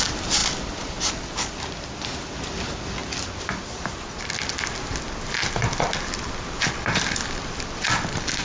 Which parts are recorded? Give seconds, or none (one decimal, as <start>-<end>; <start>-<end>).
0.0-8.4